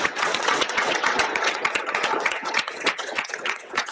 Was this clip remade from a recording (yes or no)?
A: yes